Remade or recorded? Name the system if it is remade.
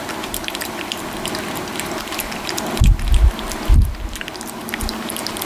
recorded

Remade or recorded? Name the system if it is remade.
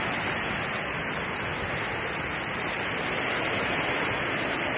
recorded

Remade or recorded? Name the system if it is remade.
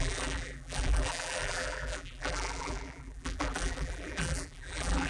remade, vocoder, BigVGAN v2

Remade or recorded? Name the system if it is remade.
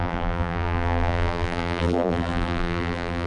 remade, vocoder, BigVGAN v2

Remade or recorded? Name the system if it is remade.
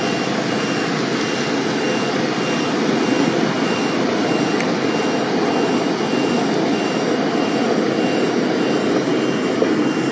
recorded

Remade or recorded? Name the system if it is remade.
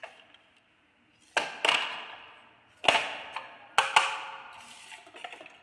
recorded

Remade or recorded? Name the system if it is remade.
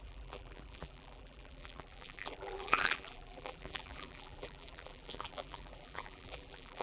remade, vocoder, BigVGAN v2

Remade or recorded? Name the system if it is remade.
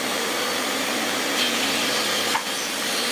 remade, vocoder, BigVGAN v2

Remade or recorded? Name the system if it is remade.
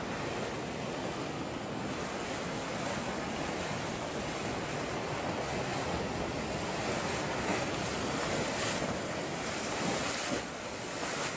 recorded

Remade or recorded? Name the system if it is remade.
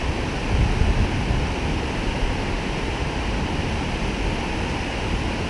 recorded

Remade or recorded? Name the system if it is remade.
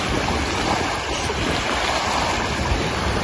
recorded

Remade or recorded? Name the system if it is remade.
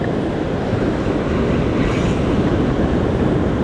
recorded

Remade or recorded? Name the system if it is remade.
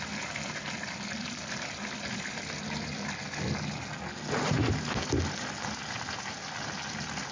recorded